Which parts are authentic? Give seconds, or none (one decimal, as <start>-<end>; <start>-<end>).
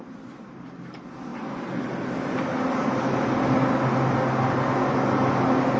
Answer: 0.0-5.8